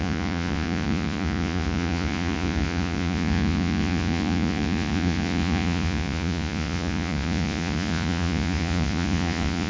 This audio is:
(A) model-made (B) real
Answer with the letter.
A